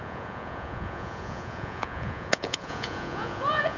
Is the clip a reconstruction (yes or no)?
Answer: yes